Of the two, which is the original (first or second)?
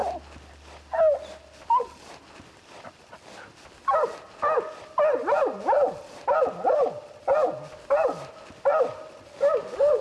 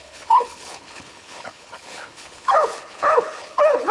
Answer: first